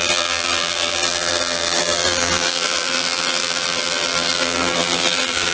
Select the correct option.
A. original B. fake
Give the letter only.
B